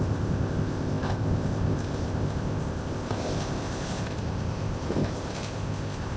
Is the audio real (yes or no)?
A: no